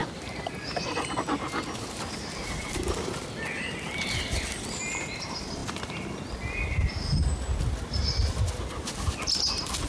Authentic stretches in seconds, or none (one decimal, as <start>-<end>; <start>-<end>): 0.0-9.9